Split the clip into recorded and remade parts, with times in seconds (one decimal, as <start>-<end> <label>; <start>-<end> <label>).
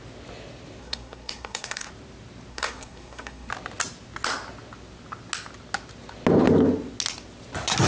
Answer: 0.0-0.8 recorded; 0.8-1.9 remade; 1.9-2.5 recorded; 2.5-3.5 remade; 3.5-7.9 recorded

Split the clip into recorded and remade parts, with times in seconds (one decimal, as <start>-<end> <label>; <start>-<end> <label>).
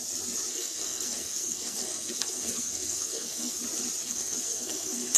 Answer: 0.0-0.5 recorded; 0.5-3.6 remade; 3.6-4.0 recorded; 4.0-5.2 remade